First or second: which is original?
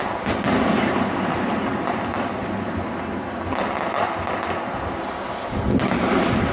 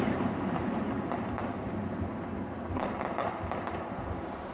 first